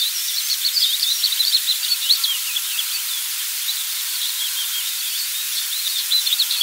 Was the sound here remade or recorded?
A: remade